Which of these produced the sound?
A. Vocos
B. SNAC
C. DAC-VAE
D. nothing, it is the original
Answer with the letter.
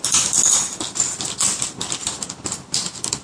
D